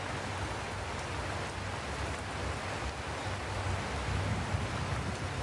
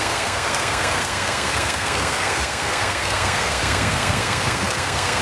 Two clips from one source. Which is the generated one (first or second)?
second